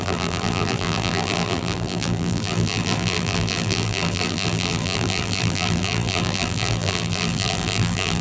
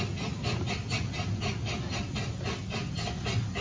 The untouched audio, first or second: second